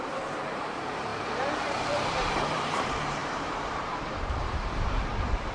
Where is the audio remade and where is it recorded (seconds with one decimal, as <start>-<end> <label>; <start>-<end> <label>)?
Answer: 0.0-5.5 remade